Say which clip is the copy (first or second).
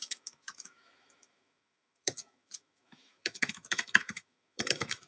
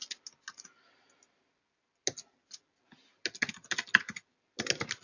first